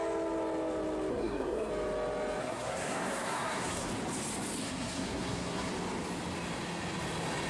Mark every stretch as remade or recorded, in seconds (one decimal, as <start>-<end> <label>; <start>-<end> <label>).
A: 0.0-1.1 recorded; 1.1-1.7 remade; 1.7-2.4 recorded; 2.4-3.9 remade; 3.9-4.6 recorded; 4.6-5.7 remade; 5.7-7.5 recorded